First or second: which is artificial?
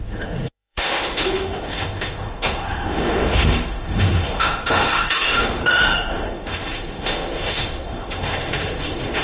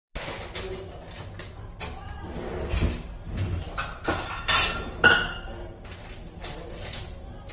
first